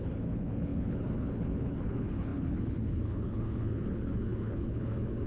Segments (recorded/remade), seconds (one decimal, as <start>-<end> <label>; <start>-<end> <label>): 0.0-5.3 remade